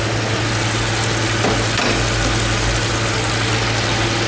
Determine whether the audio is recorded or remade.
recorded